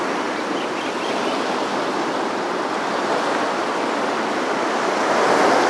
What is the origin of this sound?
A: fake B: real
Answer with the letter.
B